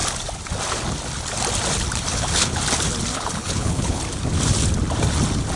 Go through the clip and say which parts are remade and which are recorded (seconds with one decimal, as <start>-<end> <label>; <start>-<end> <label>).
0.0-2.1 recorded; 2.1-2.6 remade; 2.6-3.1 recorded; 3.1-4.0 remade; 4.0-5.6 recorded